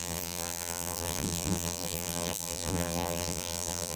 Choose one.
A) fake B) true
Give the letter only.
A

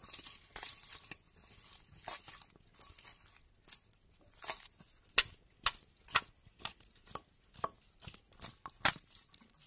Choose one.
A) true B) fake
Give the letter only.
A